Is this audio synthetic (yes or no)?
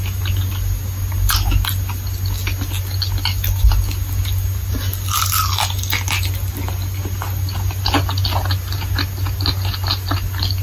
no